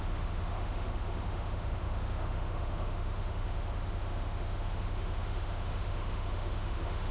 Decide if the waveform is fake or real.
fake